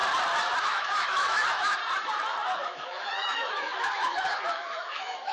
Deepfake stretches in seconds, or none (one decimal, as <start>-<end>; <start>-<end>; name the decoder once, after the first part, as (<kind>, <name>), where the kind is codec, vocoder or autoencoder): 0.6-1.8 (autoencoder, DAC-VAE); 2.6-5.3